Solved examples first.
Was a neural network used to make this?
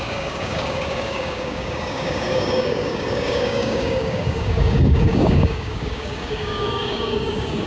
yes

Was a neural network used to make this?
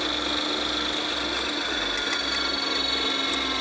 no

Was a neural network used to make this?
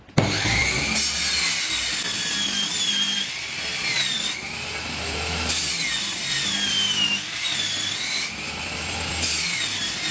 no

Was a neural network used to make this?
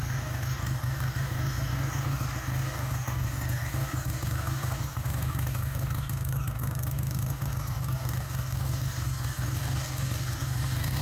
yes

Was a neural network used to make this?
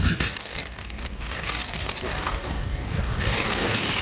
yes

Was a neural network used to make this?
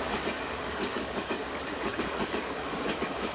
yes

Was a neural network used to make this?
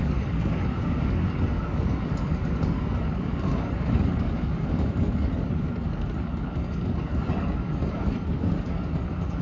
yes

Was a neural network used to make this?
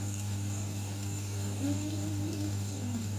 yes